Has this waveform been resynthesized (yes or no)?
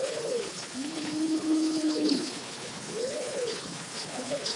yes